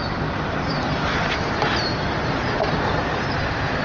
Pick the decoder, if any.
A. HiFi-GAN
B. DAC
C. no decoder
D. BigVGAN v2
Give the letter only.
D